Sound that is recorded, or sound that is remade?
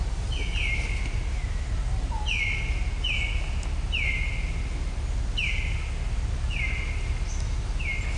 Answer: recorded